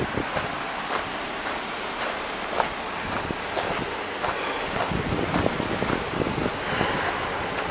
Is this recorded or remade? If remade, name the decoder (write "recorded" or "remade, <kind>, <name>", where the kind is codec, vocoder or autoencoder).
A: recorded